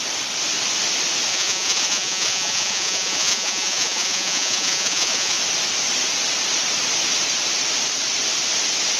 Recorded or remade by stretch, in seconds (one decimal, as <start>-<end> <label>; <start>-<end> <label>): 0.0-1.3 recorded; 1.3-5.4 remade; 5.4-9.0 recorded